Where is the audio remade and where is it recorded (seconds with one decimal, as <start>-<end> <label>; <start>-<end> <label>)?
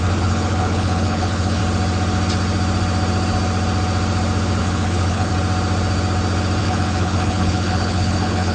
0.0-1.6 remade; 1.6-4.6 recorded; 4.6-5.3 remade; 5.3-6.6 recorded; 6.6-8.5 remade